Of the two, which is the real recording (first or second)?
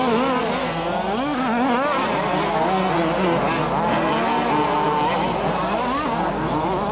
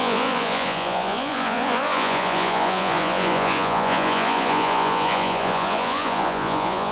first